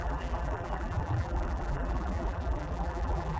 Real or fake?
fake